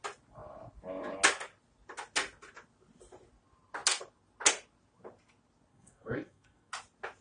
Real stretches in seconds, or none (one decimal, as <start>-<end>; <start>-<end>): 0.0-5.7; 6.7-7.2